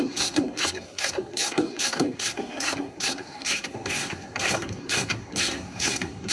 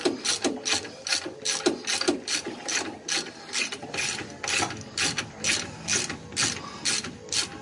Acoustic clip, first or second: second